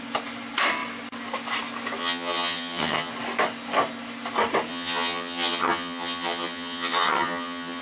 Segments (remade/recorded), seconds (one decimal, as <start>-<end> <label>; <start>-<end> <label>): 0.0-2.0 recorded; 2.0-3.1 remade; 3.1-4.7 recorded; 4.7-7.8 remade